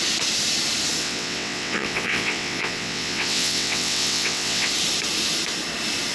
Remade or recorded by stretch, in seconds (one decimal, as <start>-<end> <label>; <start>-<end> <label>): 0.0-1.0 recorded; 1.0-4.7 remade; 4.7-6.1 recorded